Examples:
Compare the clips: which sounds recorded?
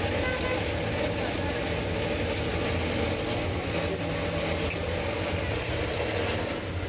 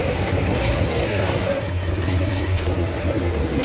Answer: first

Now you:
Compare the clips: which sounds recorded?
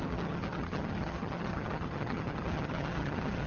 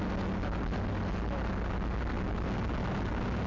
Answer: second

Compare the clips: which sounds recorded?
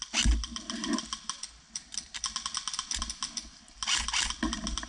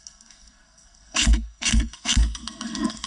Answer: first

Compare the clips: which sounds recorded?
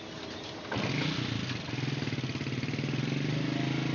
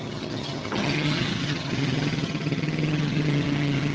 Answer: first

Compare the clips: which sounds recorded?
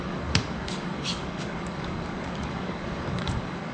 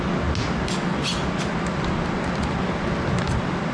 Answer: second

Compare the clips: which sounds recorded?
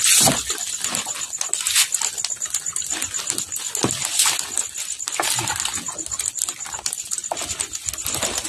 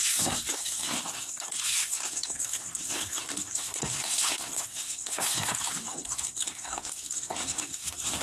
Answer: first